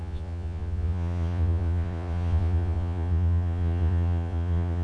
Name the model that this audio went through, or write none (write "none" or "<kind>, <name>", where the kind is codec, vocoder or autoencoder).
vocoder, Vocos